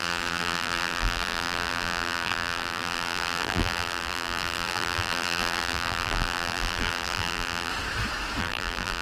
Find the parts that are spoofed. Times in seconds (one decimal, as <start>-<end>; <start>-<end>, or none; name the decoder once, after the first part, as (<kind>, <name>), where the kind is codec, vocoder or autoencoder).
0.0-7.7 (vocoder, BigVGAN v2); 8.4-9.0